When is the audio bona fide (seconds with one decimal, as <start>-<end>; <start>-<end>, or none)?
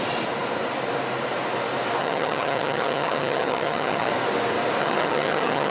0.0-2.0; 4.1-4.8